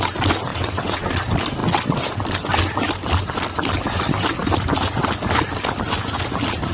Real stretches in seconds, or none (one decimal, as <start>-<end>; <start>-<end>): 0.0-0.5; 1.1-6.7